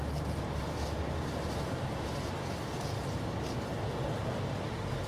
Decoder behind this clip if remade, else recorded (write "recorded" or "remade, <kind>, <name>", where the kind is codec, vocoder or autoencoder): recorded